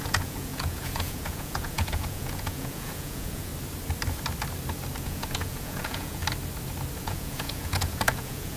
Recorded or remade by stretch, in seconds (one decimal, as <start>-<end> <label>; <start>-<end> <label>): 0.0-3.5 remade; 3.5-5.0 recorded; 5.0-6.2 remade; 6.2-7.0 recorded; 7.0-8.6 remade